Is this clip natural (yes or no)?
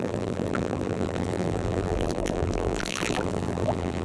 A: no